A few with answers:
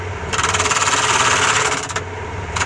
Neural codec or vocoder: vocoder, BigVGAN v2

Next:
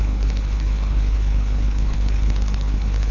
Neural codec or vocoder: codec, HILCodec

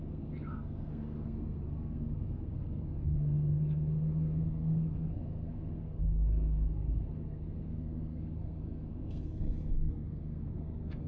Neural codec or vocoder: codec, SNAC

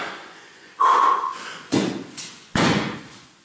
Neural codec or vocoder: vocoder, Vocos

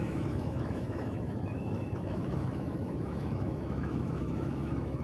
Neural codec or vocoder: autoencoder, DAC-VAE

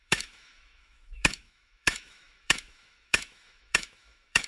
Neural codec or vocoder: autoencoder, DAC-VAE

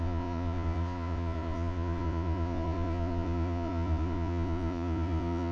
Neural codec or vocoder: vocoder, Vocos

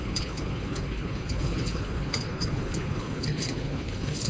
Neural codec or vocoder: codec, HILCodec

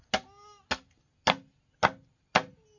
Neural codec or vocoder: none